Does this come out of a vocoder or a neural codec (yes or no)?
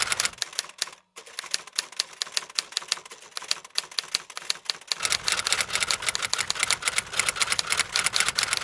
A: no